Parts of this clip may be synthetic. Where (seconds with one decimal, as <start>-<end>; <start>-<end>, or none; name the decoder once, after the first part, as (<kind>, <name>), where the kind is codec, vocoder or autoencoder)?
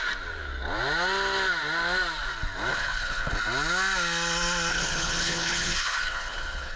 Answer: 2.7-3.3 (codec, HILCodec); 4.7-6.8